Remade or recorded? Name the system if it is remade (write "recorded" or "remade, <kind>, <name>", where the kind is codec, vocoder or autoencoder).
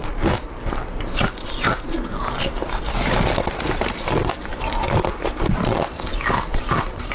recorded